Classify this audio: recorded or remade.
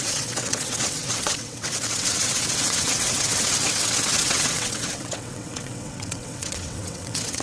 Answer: remade